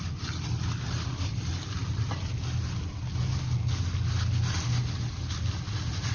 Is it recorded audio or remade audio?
recorded